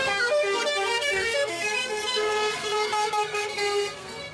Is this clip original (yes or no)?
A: no